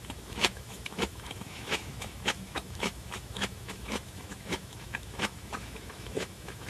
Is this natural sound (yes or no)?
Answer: no